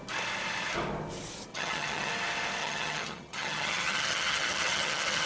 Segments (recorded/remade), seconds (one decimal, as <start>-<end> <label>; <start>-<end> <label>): 0.0-1.5 recorded; 1.5-2.1 remade; 2.1-2.6 recorded; 2.6-5.3 remade